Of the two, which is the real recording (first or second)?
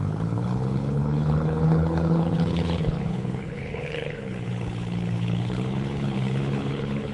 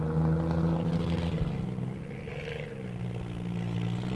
second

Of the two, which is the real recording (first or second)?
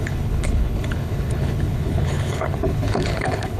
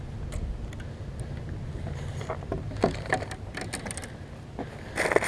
second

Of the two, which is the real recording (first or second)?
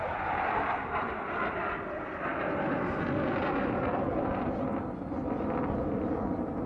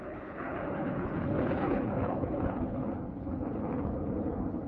first